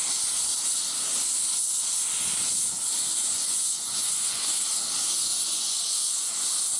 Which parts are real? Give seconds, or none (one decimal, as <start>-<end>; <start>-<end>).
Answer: 0.0-3.2; 4.6-5.3; 6.3-6.8